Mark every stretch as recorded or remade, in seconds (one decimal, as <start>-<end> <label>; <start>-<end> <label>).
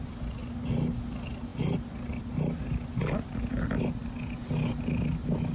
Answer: 0.0-5.5 recorded